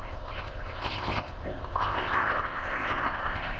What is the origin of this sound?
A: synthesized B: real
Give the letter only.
A